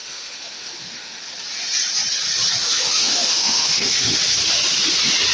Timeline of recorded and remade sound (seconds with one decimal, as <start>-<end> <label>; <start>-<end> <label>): 0.0-1.2 remade; 1.2-2.6 recorded; 2.6-4.2 remade; 4.2-5.3 recorded